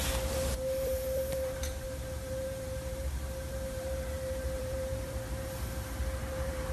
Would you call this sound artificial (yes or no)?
yes